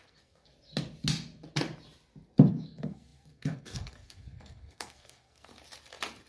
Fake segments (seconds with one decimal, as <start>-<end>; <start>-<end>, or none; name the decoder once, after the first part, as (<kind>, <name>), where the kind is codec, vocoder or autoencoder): 0.0-0.5 (codec, SNAC); 2.5-5.5